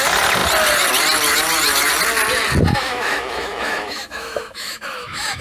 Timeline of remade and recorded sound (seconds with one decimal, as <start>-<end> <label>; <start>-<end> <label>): 0.0-2.7 recorded; 2.7-5.4 remade